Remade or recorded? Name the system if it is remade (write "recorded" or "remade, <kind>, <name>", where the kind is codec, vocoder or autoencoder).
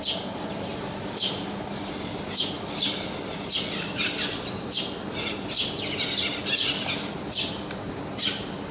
recorded